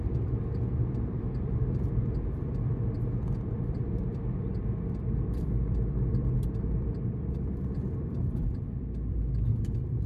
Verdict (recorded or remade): remade